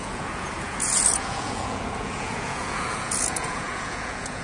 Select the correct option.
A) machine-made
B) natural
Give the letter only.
A